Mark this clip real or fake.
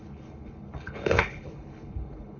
fake